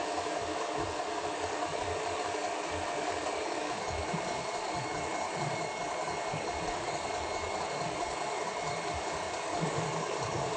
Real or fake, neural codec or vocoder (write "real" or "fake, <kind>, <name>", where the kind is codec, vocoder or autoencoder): fake, codec, DAC